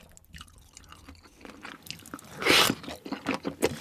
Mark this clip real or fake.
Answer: real